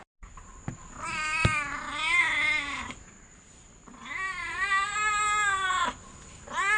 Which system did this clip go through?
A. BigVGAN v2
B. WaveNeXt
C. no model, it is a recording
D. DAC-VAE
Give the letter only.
C